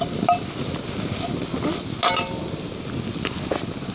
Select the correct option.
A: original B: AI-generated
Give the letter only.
A